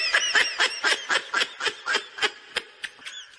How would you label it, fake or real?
real